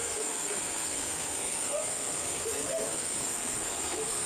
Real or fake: fake